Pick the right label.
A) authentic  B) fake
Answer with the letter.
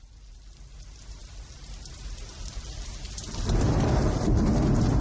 A